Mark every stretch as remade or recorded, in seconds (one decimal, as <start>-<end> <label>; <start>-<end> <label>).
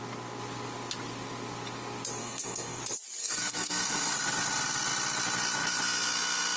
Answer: 0.0-2.2 recorded; 2.2-2.8 remade; 2.8-3.2 recorded; 3.2-4.1 remade; 4.1-6.6 recorded